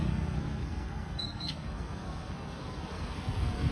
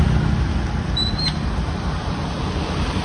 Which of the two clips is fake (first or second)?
first